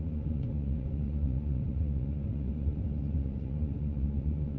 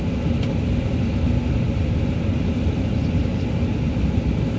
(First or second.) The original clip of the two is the second